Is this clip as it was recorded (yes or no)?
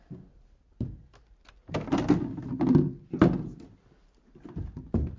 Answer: yes